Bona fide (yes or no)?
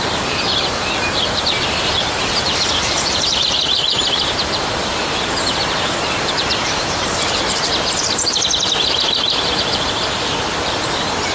no